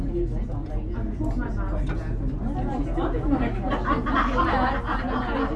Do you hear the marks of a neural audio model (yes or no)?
no